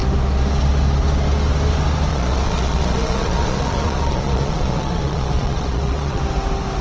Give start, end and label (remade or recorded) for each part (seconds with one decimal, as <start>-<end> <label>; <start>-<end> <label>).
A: 0.0-2.1 recorded; 2.1-6.2 remade; 6.2-6.8 recorded